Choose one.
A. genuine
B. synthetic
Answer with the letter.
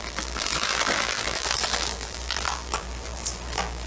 B